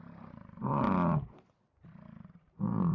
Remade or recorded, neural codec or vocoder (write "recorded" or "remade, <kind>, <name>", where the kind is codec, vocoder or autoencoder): recorded